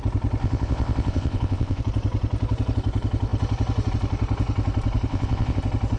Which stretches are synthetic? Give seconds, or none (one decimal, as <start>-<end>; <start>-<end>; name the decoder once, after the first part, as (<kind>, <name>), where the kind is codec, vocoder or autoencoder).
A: 0.4-1.8 (vocoder, WaveNeXt); 5.1-5.6